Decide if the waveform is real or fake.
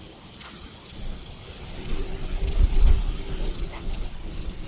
real